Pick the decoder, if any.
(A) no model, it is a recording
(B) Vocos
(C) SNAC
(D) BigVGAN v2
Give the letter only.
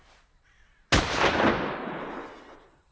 A